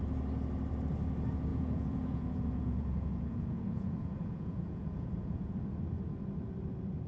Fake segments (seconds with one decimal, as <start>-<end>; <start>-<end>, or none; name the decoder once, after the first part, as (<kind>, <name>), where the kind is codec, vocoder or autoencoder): 1.5-5.6 (vocoder, Vocos)